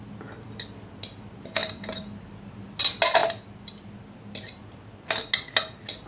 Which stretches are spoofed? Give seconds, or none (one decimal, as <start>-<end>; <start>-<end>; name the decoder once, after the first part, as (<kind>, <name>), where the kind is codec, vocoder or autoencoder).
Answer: 1.6-2.8 (vocoder, BigVGAN v2)